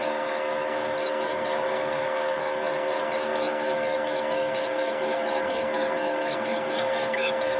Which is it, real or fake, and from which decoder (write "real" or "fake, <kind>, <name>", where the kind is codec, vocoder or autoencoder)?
fake, codec, SNAC